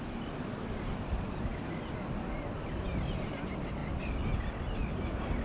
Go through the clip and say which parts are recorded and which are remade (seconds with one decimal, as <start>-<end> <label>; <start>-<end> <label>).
0.0-5.4 recorded